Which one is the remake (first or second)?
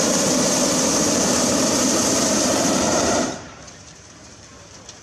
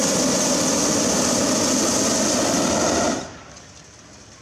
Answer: first